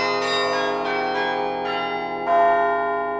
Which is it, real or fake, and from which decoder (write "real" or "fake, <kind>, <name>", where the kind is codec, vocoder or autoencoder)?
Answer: real